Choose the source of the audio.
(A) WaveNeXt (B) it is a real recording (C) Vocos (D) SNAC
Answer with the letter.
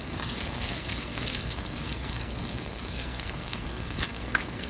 D